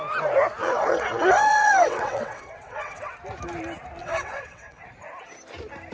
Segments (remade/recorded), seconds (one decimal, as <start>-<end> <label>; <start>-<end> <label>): 0.0-0.6 recorded; 0.6-3.1 remade; 3.1-4.0 recorded; 4.0-4.8 remade; 4.8-5.9 recorded